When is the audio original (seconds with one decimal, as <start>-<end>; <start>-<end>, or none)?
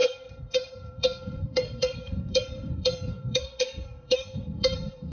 none